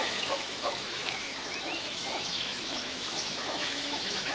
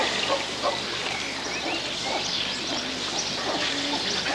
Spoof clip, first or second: first